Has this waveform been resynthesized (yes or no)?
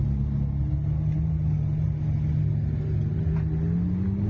no